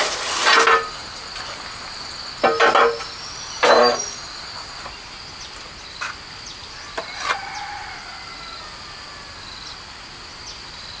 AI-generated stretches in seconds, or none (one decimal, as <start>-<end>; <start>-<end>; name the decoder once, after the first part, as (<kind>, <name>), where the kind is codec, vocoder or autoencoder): none